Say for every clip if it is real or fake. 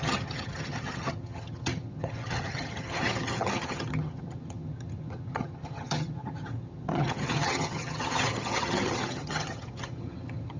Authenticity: fake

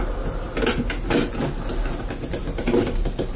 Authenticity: real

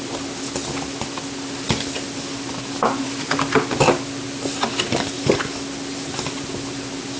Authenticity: real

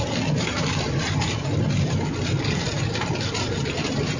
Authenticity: real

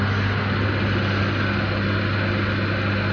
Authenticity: real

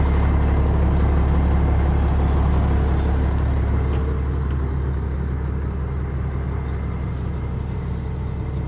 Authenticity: real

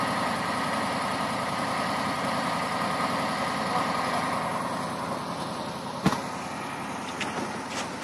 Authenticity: real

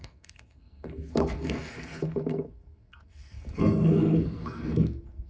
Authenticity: fake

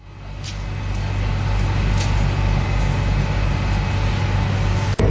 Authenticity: real